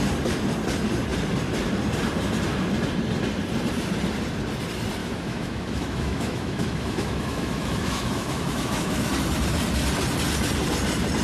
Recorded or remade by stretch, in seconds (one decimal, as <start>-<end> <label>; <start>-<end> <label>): 0.0-5.0 recorded; 5.0-9.1 remade; 9.1-11.2 recorded